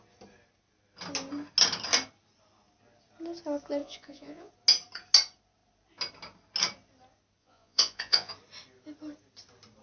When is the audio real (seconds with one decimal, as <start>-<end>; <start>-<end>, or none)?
0.0-3.8; 4.5-7.4; 8.3-9.8